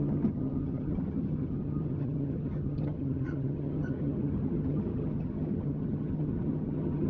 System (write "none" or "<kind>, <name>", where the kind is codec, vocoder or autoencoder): vocoder, HiFi-GAN